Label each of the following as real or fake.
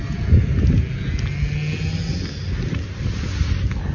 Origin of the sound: real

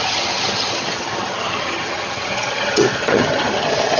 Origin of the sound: fake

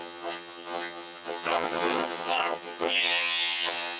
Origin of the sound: fake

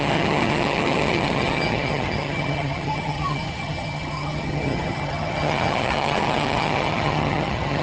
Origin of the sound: fake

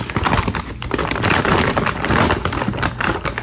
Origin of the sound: real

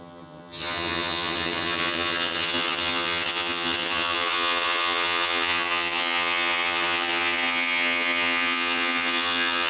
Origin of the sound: fake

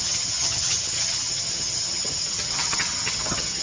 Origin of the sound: fake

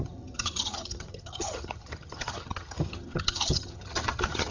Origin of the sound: fake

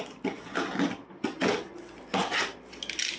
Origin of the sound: real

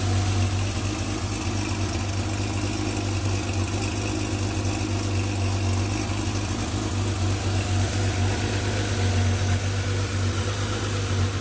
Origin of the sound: real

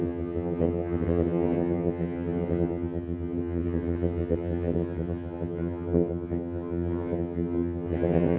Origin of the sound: fake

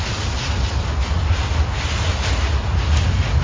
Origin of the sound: real